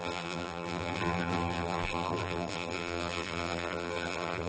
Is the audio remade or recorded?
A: remade